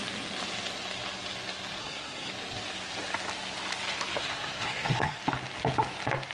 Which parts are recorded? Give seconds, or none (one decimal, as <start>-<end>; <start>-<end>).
0.0-1.8; 2.3-4.2; 5.2-6.3